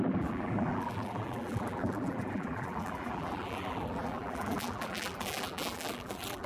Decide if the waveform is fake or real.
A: fake